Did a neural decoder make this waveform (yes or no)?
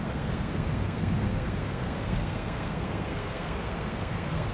yes